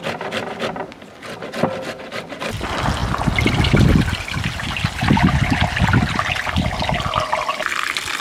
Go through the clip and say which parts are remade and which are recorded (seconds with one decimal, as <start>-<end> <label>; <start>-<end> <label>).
0.0-8.2 recorded